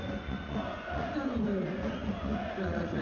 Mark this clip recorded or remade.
remade